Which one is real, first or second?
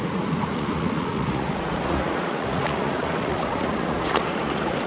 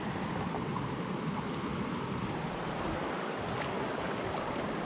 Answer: second